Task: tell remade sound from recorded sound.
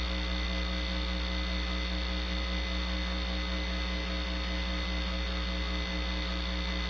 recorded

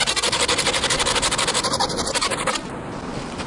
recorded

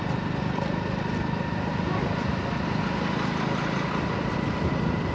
recorded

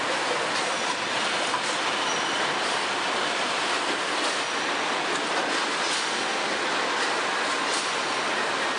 recorded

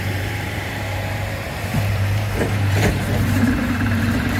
remade